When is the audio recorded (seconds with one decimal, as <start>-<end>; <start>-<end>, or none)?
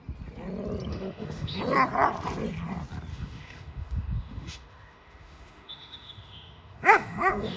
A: 0.0-0.9; 1.6-3.1